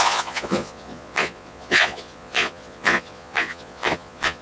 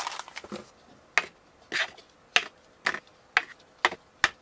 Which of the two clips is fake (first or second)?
first